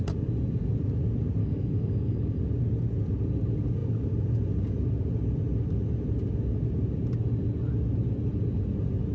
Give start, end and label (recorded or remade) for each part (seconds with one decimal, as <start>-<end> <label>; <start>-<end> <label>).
0.0-1.4 recorded; 1.4-2.4 remade; 2.4-9.1 recorded